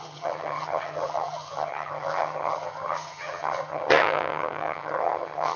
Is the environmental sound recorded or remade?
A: remade